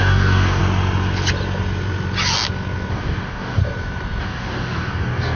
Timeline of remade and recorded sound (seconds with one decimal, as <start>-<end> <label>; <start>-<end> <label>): 0.0-0.6 remade; 0.6-2.9 recorded; 2.9-3.6 remade; 3.6-4.2 recorded; 4.2-5.4 remade